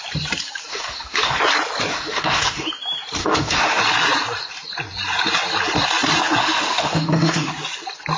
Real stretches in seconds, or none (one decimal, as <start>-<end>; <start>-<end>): 0.0-0.7; 1.4-1.9; 2.7-3.2; 3.8-6.4; 7.5-8.2